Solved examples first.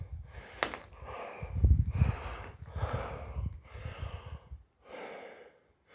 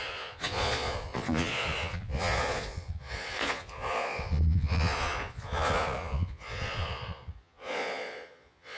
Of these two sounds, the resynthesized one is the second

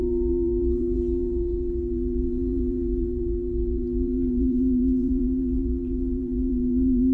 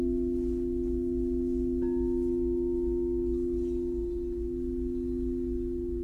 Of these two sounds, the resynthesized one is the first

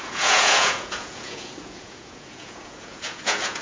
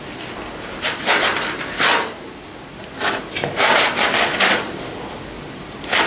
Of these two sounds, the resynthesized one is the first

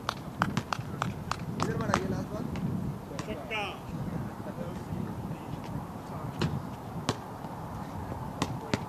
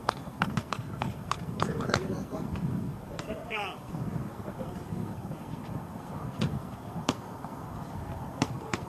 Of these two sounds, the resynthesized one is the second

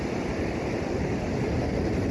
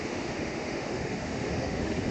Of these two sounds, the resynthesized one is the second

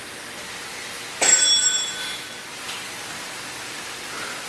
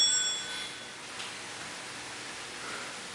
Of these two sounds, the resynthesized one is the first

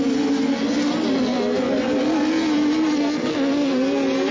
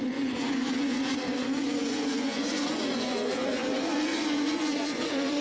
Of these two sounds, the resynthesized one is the second